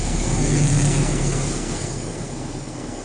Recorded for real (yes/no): no